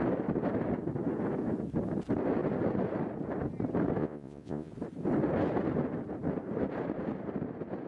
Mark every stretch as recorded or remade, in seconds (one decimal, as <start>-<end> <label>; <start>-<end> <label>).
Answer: 0.0-4.0 recorded; 4.0-4.7 remade; 4.7-7.9 recorded